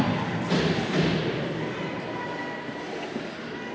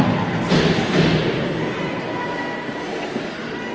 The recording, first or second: second